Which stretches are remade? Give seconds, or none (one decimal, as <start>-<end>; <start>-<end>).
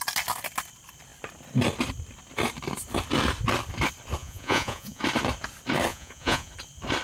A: 4.2-5.0; 5.9-6.5